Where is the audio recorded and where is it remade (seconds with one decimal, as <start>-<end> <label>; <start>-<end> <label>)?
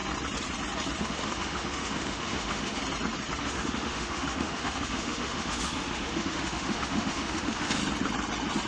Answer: 0.0-1.0 recorded; 1.0-2.8 remade; 2.8-3.4 recorded; 3.4-7.8 remade; 7.8-8.7 recorded